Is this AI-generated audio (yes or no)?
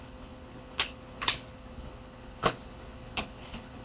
yes